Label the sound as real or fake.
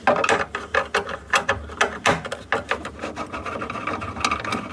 real